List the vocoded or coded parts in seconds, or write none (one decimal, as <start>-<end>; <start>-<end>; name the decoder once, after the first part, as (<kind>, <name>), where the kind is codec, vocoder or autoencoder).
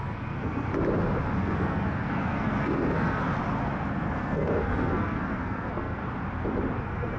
0.0-0.7 (codec, SNAC); 1.4-3.3; 3.9-6.0; 6.8-7.2